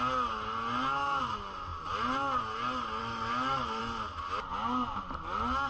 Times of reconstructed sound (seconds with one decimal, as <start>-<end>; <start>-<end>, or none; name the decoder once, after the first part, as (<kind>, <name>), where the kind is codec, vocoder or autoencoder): 3.0-3.8 (autoencoder, DAC-VAE)